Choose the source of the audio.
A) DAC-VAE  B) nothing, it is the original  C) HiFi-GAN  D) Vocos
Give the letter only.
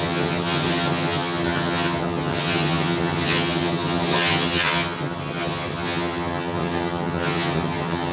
C